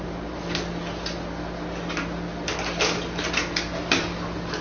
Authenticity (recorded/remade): recorded